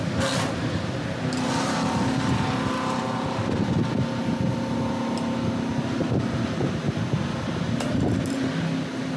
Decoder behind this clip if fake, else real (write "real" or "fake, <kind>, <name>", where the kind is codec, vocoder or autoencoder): real